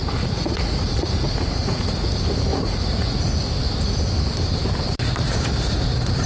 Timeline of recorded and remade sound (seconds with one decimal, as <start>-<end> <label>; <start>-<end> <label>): 0.0-2.1 remade; 2.1-2.5 recorded; 2.5-3.2 remade; 3.2-6.3 recorded